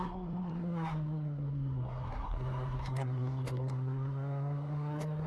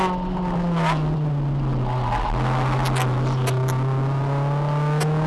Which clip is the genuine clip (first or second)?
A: second